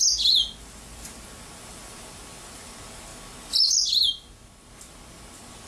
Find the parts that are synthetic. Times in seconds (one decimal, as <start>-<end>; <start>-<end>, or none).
none